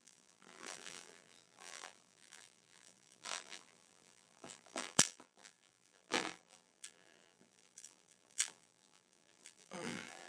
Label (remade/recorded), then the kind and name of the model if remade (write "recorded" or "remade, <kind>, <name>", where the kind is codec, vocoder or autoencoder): remade, vocoder, BigVGAN v2